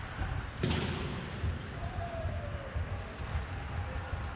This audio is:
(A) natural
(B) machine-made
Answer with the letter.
A